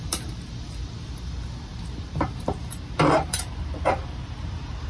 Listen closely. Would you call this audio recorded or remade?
remade